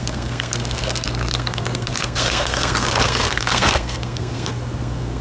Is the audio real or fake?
fake